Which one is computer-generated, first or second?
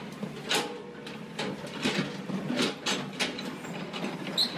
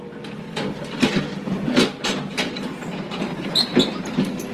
second